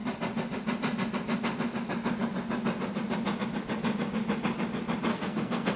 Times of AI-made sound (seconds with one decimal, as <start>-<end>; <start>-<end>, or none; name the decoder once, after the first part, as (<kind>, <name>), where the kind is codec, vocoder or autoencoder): 5.1-5.8 (codec, SNAC)